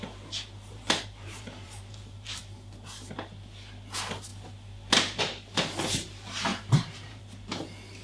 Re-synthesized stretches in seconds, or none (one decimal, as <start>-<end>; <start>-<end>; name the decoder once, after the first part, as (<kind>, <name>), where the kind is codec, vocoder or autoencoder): 0.7-2.4 (vocoder, BigVGAN v2); 6.5-7.2